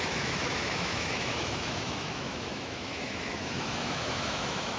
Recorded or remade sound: remade